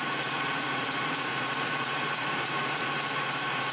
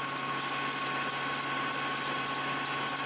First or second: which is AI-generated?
first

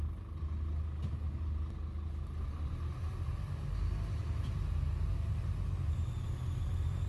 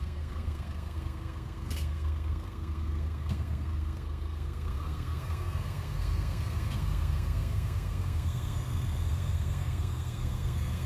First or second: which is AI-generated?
second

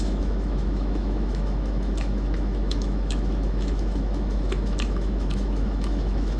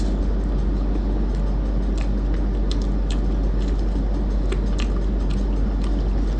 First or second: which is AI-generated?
first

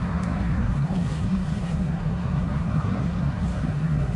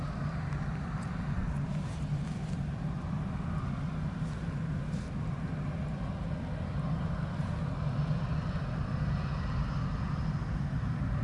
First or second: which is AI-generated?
first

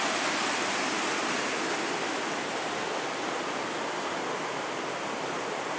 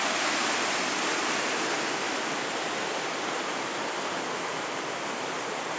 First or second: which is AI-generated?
second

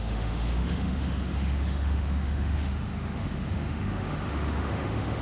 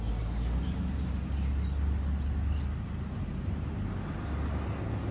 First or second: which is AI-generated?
first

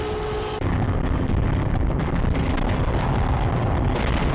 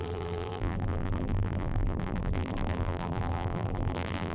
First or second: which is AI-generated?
second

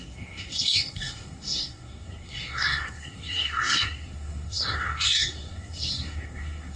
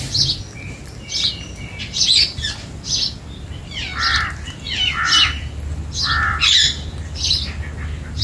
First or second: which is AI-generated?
first